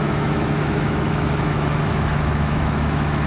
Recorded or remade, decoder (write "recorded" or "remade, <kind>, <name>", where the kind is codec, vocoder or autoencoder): remade, autoencoder, DAC-VAE